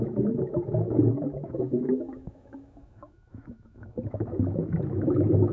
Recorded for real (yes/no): no